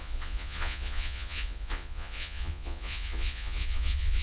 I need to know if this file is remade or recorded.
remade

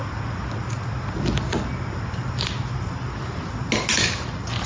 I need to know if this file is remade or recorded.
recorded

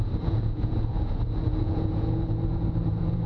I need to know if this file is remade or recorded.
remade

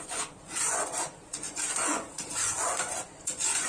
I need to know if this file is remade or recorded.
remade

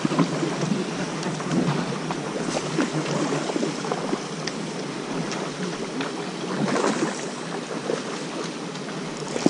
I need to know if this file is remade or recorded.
recorded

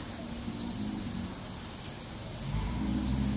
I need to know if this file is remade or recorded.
recorded